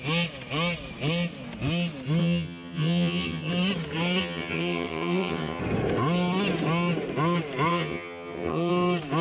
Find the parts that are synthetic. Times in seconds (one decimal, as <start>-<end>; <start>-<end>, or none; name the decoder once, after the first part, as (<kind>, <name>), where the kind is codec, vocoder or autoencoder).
2.2-3.5 (vocoder, HiFi-GAN); 4.2-5.6; 7.7-8.7